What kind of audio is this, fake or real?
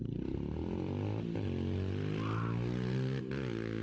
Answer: real